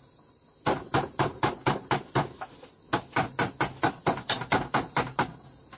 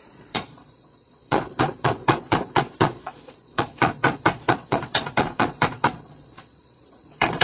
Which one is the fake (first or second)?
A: second